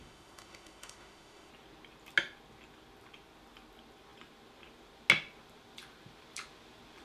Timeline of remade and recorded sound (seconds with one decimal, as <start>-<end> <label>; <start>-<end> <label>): 0.0-1.5 remade; 1.5-7.0 recorded